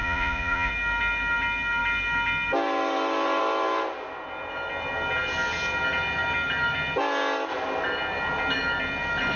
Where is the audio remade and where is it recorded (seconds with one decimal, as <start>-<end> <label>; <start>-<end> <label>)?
0.0-0.7 remade; 0.7-9.4 recorded